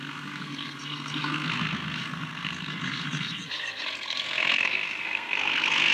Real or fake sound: fake